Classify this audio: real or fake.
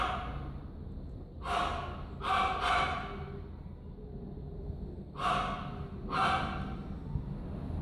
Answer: real